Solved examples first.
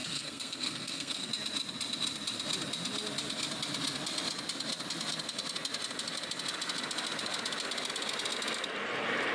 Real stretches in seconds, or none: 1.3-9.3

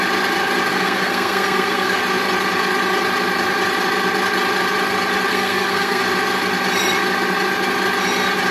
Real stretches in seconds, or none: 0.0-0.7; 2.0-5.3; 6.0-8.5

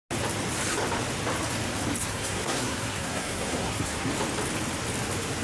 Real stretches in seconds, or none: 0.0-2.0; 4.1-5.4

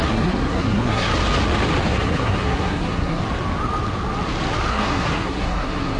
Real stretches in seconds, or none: 1.1-1.9; 3.2-4.7

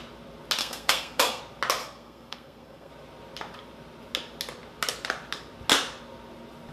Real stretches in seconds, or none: 0.0-0.6; 1.4-1.8; 2.9-6.7

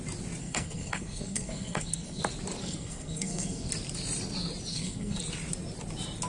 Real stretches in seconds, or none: 0.0-0.4; 2.2-2.6; 3.7-4.7; 5.2-6.3